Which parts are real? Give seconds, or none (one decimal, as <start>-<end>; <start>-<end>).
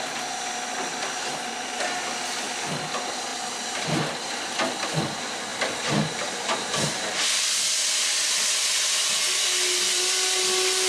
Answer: 0.0-3.3; 4.3-5.5; 7.2-10.9